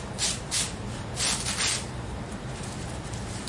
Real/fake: fake